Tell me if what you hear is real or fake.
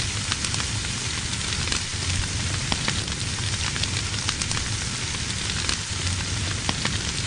real